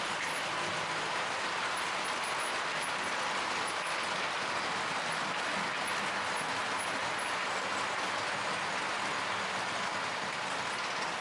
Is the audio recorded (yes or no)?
yes